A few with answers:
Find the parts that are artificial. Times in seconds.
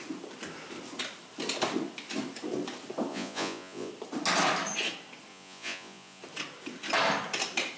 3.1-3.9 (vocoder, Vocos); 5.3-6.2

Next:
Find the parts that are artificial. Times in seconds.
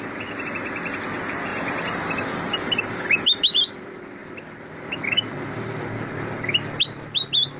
none